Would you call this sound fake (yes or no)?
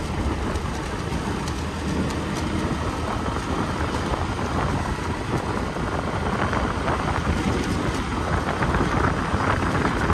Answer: no